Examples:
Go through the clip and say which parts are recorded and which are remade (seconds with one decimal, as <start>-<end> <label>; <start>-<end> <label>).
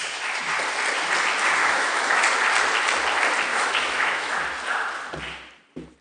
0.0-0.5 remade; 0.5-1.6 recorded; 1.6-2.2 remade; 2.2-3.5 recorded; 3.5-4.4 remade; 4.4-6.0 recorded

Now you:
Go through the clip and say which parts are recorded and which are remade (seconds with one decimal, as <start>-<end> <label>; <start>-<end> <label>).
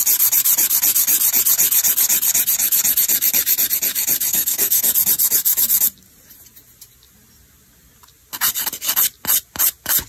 0.0-4.3 recorded; 4.3-4.9 remade; 4.9-10.1 recorded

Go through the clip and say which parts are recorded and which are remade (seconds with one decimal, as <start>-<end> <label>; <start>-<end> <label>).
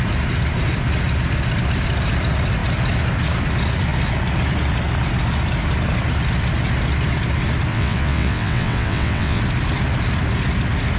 0.0-7.7 recorded; 7.7-9.4 remade; 9.4-11.0 recorded